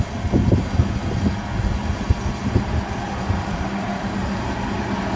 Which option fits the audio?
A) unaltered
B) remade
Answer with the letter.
A